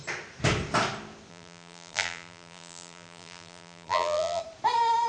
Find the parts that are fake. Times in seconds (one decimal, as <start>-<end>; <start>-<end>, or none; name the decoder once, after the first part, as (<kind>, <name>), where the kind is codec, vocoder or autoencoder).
1.3-4.4 (vocoder, BigVGAN v2)